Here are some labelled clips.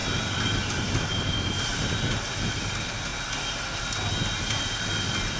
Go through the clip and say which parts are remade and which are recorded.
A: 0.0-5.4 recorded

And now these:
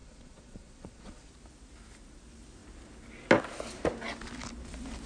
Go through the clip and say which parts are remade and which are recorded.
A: 0.0-1.3 remade; 1.3-5.1 recorded